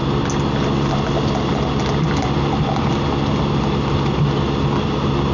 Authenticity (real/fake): real